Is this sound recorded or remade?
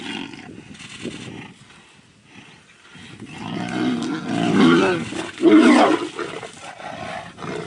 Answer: recorded